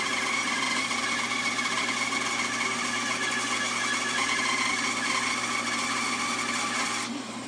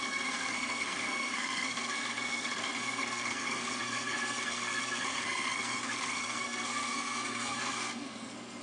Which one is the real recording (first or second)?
first